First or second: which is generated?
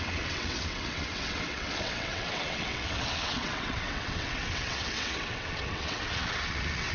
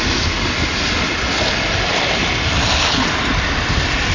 first